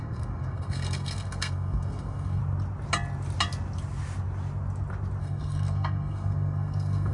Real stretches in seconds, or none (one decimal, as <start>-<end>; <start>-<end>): 2.4-5.2